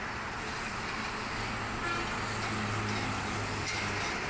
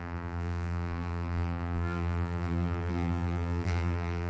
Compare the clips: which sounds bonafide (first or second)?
first